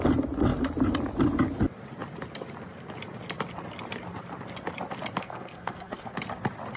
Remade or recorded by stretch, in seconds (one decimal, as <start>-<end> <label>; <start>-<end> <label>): 0.0-5.2 recorded; 5.2-6.2 remade; 6.2-6.8 recorded